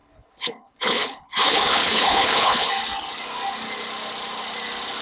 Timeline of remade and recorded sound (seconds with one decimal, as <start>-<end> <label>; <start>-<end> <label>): 0.0-2.7 remade; 2.7-5.0 recorded